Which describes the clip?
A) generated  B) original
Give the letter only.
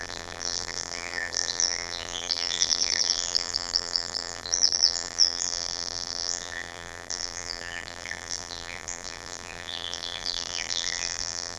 A